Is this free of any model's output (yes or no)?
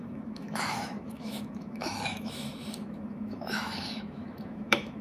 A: no